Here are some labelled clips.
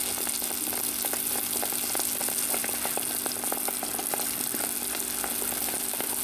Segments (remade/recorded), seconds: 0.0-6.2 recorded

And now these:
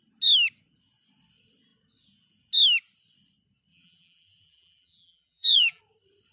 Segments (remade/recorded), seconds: 0.0-3.7 recorded; 3.7-5.8 remade; 5.8-6.3 recorded

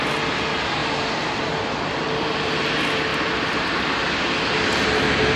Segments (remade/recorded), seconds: 0.0-0.8 recorded; 0.8-2.3 remade; 2.3-3.1 recorded; 3.1-4.2 remade; 4.2-5.4 recorded